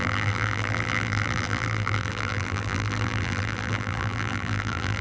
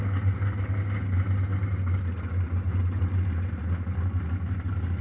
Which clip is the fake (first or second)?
first